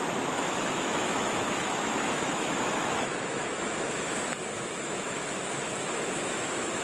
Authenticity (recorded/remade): remade